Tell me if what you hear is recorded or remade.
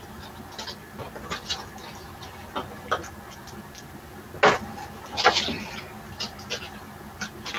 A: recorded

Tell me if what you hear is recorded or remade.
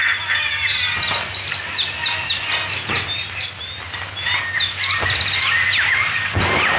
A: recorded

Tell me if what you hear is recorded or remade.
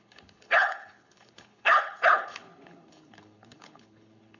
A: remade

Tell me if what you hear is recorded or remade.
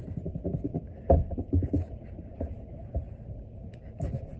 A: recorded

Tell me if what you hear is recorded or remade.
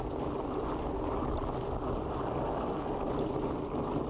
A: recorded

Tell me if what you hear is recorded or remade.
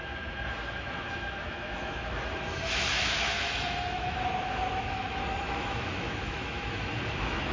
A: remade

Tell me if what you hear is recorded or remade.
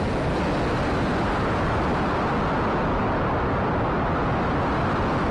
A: recorded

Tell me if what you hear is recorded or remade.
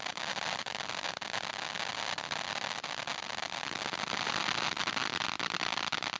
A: recorded